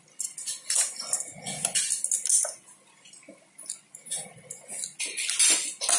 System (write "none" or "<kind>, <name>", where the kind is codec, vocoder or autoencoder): none